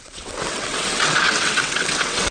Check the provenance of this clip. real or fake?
fake